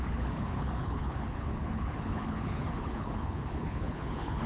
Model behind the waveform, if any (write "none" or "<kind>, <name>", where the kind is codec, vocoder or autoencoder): codec, HILCodec